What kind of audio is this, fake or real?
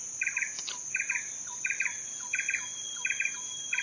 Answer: real